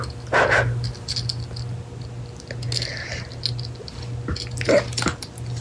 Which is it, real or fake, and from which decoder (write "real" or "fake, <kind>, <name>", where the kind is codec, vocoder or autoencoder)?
real